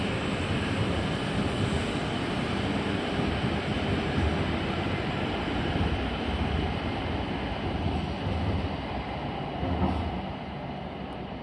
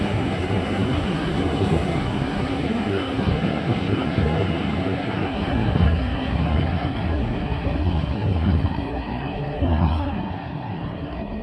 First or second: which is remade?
second